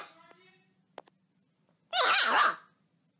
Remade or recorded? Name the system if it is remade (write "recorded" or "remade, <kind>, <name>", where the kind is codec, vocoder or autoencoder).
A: recorded